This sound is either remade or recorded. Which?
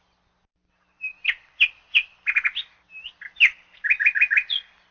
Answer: recorded